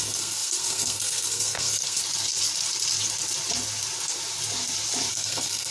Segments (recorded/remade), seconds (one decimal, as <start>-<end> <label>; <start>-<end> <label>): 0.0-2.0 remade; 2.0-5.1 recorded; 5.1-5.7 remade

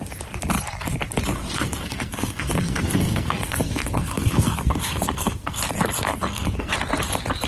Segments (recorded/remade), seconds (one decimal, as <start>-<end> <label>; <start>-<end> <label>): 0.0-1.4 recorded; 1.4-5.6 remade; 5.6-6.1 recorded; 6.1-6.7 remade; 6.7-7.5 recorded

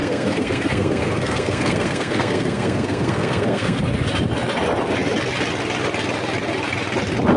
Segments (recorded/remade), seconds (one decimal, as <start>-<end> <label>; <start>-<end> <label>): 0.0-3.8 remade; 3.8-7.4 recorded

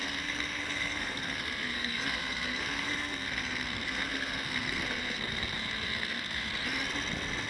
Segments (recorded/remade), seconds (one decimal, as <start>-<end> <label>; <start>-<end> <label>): 0.0-6.5 remade; 6.5-7.5 recorded

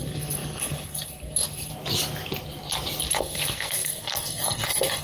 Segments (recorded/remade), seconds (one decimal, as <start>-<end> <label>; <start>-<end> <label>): 0.0-1.7 remade; 1.7-3.2 recorded; 3.2-5.0 remade

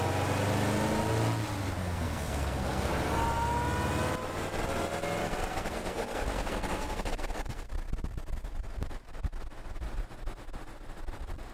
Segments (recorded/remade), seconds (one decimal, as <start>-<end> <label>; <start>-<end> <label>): 0.0-1.8 recorded; 1.8-2.9 remade; 2.9-5.2 recorded; 5.2-7.7 remade; 7.7-11.5 recorded